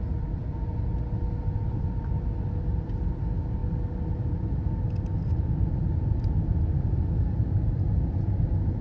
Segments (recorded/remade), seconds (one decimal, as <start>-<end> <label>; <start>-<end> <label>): 0.0-8.8 recorded